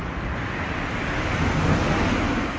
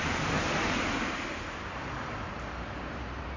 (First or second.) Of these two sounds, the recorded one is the first